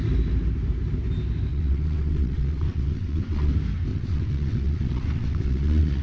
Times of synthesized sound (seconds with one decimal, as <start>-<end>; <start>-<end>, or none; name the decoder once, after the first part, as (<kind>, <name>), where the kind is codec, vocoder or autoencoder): 1.5-3.5 (vocoder, WaveNeXt); 3.9-6.0